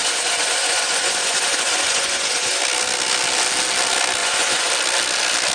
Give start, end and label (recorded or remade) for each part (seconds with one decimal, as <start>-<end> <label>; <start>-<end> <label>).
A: 0.0-2.6 remade; 2.6-4.2 recorded; 4.2-4.7 remade; 4.7-5.5 recorded